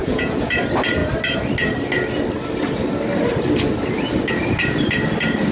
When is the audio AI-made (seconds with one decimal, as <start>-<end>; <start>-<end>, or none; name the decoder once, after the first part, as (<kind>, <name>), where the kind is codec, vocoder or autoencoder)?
0.0-0.6 (vocoder, Vocos)